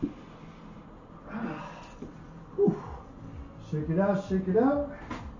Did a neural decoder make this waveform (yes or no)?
no